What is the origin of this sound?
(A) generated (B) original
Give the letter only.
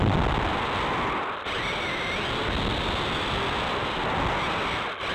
B